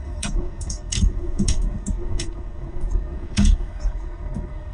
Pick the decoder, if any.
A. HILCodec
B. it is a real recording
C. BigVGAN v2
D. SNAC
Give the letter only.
D